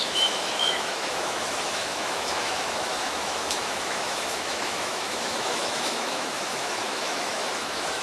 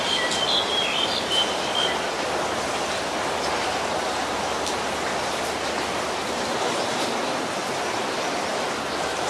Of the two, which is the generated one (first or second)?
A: first